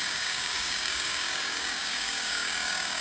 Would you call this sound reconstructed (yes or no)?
yes